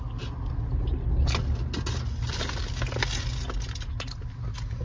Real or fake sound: real